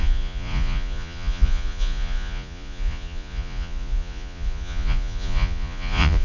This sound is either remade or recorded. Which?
remade